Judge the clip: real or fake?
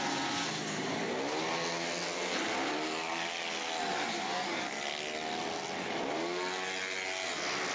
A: real